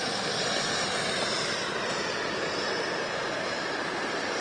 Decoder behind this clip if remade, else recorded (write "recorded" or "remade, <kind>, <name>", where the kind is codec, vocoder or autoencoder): recorded